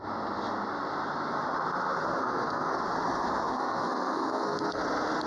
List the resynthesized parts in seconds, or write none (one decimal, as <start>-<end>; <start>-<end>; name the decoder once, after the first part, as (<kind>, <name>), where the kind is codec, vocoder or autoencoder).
2.2-2.8 (codec, SNAC); 3.5-4.8